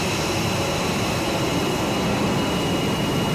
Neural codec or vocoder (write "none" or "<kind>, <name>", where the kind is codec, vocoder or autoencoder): none